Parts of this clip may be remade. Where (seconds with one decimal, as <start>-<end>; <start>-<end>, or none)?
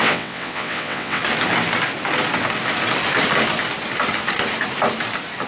0.0-1.2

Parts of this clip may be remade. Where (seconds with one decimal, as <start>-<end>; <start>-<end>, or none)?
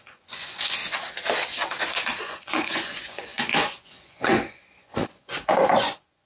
0.0-0.8; 2.2-6.3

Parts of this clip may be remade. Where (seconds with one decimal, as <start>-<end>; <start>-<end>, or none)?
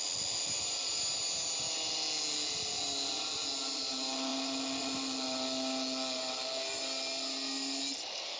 none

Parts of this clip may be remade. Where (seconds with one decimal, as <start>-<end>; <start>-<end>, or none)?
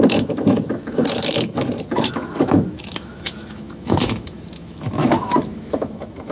0.0-6.3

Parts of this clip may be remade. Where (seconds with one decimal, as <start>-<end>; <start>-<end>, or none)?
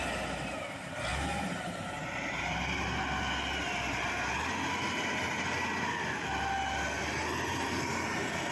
7.5-8.5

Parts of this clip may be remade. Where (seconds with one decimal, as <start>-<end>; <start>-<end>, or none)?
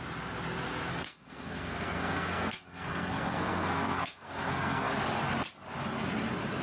0.9-4.9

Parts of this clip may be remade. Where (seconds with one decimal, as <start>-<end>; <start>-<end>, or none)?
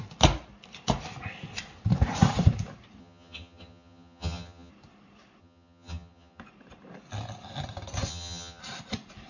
3.0-4.7; 5.4-6.4; 8.1-8.6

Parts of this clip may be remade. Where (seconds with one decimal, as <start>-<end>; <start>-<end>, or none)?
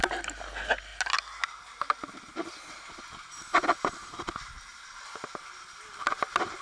none